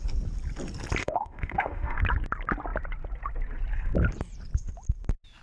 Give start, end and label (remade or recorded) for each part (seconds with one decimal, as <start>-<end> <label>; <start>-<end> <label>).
0.0-1.0 recorded; 1.0-2.0 remade; 2.0-5.4 recorded